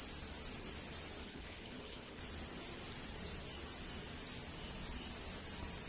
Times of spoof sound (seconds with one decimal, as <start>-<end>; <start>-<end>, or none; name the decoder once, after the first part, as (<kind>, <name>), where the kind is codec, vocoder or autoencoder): 1.2-2.2 (codec, HILCodec)